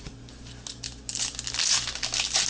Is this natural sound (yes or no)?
yes